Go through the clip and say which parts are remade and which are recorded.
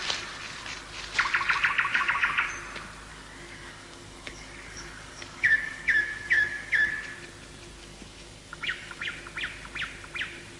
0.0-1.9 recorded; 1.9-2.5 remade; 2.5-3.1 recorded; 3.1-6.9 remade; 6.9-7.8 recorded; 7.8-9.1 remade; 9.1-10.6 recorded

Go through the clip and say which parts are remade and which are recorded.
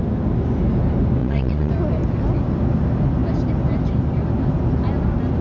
0.0-1.2 recorded; 1.2-1.7 remade; 1.7-5.4 recorded